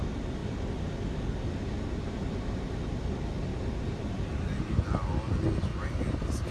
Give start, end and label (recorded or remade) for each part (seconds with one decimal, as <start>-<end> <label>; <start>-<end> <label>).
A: 0.0-6.5 recorded

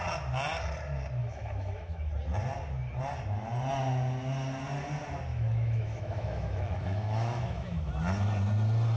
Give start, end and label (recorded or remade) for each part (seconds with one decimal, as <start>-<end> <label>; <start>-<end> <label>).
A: 0.0-1.2 recorded; 1.2-2.1 remade; 2.1-5.3 recorded; 5.3-7.9 remade; 7.9-9.0 recorded

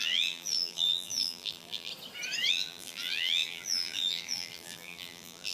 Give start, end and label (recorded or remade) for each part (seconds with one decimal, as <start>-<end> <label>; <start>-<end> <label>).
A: 0.0-1.9 remade; 1.9-2.5 recorded; 2.5-5.5 remade

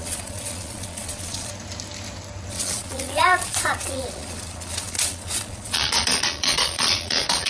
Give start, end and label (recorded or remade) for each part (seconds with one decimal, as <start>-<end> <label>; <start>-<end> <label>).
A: 0.0-1.5 remade; 1.5-2.5 recorded; 2.5-7.5 remade

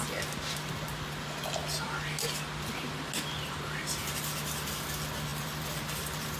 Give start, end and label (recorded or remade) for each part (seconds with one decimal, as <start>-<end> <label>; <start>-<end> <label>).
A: 0.0-5.3 recorded; 5.3-6.4 remade

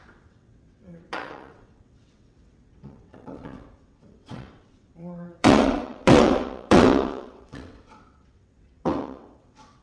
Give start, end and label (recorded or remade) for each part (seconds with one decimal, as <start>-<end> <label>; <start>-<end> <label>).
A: 0.0-9.8 remade

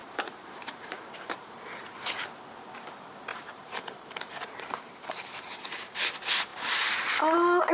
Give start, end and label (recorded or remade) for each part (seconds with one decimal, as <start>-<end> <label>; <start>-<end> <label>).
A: 0.0-2.1 remade; 2.1-3.3 recorded; 3.3-5.6 remade; 5.6-7.7 recorded

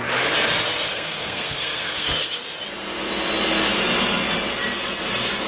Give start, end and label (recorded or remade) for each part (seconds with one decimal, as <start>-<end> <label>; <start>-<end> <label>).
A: 0.0-0.9 recorded; 0.9-2.5 remade; 2.5-5.5 recorded